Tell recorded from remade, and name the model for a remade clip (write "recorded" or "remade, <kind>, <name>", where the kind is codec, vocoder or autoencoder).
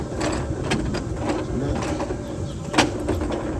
recorded